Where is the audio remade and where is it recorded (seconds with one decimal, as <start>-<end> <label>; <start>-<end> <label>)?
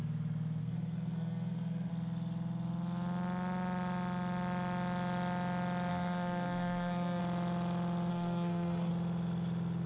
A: 0.0-0.6 recorded; 0.6-1.9 remade; 1.9-5.9 recorded; 5.9-7.2 remade; 7.2-8.1 recorded; 8.1-8.9 remade; 8.9-9.9 recorded